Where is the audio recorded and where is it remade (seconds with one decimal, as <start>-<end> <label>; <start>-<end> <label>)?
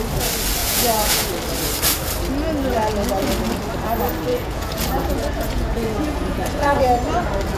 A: 0.0-0.6 recorded; 0.6-1.3 remade; 1.3-4.3 recorded; 4.3-6.8 remade; 6.8-7.6 recorded